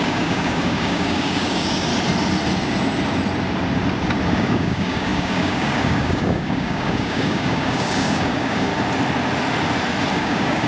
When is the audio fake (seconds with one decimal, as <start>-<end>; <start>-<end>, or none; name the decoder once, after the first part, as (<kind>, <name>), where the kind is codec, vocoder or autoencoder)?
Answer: 0.0-1.9 (codec, DAC); 4.3-8.7; 10.1-10.7